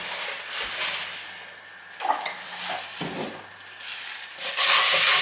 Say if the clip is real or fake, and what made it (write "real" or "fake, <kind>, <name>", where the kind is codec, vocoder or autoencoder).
real